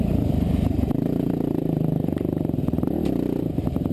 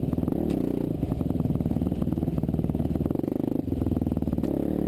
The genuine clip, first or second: second